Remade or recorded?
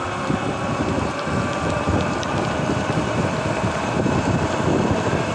recorded